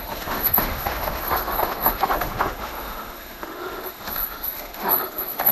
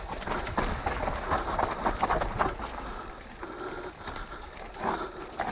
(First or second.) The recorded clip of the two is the second